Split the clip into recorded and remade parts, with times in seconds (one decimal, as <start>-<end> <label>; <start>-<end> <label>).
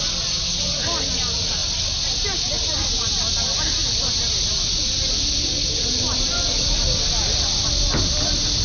0.0-8.6 recorded